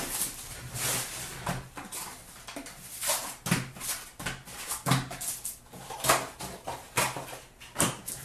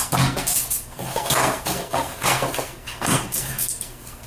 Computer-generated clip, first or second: second